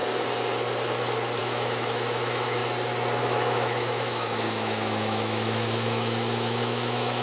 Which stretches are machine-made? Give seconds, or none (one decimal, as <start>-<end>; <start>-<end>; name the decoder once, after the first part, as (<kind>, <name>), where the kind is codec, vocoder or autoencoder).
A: 1.4-2.6 (autoencoder, DAC-VAE); 3.2-7.2